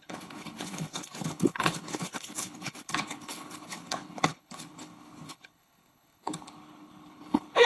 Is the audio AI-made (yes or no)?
yes